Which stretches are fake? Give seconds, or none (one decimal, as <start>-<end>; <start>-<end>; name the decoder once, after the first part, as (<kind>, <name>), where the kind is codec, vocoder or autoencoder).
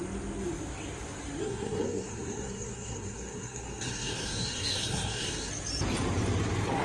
1.4-5.5 (codec, SNAC)